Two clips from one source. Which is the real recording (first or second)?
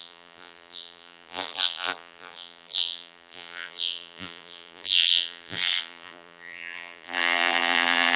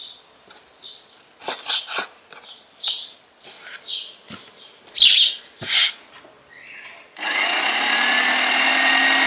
second